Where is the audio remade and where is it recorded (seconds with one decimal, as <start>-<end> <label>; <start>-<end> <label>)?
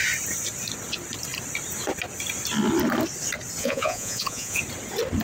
0.0-3.6 recorded; 3.6-4.6 remade; 4.6-5.2 recorded